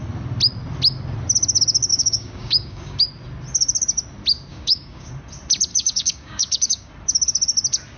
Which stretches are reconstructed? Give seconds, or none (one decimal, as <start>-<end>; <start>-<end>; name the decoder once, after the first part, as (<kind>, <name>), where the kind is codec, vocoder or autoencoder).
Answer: 1.9-3.0 (codec, DAC); 4.5-5.1; 5.7-6.9